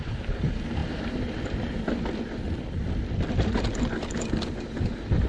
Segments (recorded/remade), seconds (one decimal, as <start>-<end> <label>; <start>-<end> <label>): 0.0-5.3 recorded

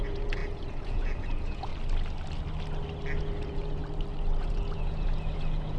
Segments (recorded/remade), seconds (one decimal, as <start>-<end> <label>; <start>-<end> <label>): 0.0-1.7 remade; 1.7-3.2 recorded; 3.2-3.8 remade; 3.8-4.4 recorded; 4.4-5.8 remade

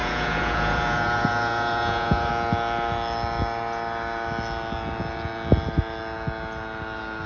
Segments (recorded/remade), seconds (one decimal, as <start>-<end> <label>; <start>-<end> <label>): 0.0-2.3 remade; 2.3-7.3 recorded

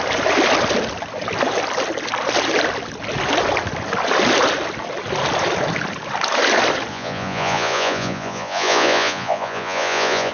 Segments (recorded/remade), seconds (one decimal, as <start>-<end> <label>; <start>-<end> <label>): 0.0-6.9 recorded; 6.9-10.3 remade

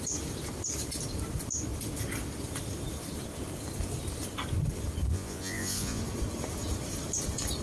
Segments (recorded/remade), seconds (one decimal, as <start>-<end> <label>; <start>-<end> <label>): 0.0-5.1 recorded; 5.1-6.0 remade; 6.0-7.6 recorded

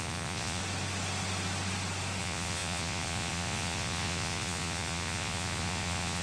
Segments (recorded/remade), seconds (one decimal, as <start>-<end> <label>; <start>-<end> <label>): 0.0-0.6 remade; 0.6-2.2 recorded; 2.2-6.2 remade

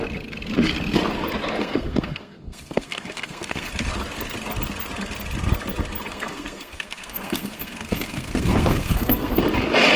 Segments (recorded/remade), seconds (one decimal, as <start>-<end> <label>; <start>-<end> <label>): 0.0-1.6 recorded; 1.6-3.7 remade; 3.7-6.1 recorded; 6.1-9.4 remade; 9.4-10.0 recorded